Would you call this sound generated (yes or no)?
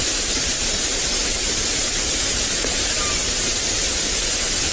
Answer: yes